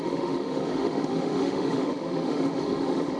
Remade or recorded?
remade